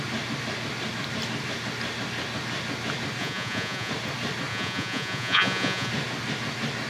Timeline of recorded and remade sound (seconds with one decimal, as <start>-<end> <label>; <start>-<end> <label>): 0.0-3.2 recorded; 3.2-3.9 remade; 3.9-4.5 recorded; 4.5-5.9 remade; 5.9-6.9 recorded